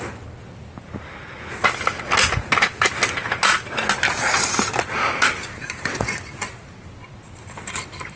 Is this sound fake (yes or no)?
no